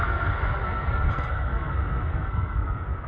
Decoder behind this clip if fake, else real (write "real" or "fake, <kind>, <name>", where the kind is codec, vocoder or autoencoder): fake, codec, SNAC